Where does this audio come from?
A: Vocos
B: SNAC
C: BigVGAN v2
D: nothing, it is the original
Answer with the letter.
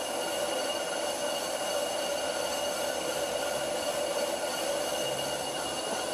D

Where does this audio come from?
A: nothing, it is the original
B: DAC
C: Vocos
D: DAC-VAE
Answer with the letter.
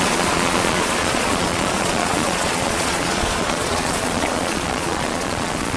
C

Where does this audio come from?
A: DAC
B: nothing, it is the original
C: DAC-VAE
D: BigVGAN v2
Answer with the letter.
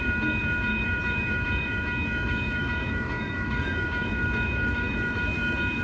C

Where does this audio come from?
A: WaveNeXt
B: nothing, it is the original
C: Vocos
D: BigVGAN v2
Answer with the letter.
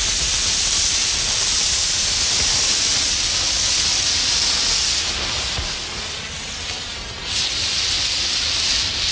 B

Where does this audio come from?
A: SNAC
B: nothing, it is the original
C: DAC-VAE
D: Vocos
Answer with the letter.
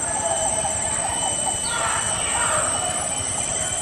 B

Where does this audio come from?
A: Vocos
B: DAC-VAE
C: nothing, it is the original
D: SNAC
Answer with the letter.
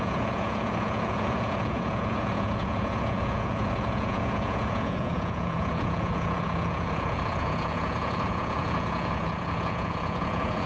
A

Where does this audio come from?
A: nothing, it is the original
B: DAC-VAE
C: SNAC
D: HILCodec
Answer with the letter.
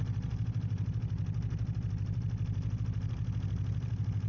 A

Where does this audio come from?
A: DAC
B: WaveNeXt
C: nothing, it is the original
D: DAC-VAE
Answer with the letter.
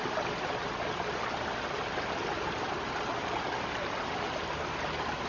C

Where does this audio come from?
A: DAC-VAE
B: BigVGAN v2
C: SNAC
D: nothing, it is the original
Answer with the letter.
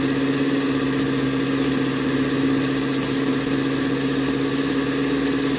D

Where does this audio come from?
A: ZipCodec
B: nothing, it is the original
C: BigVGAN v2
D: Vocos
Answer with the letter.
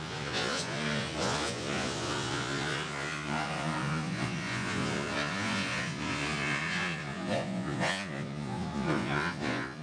D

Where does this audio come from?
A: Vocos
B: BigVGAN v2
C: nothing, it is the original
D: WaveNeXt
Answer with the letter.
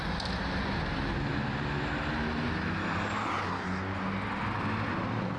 C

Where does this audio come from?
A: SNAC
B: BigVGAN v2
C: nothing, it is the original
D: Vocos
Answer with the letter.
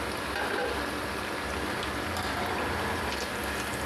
C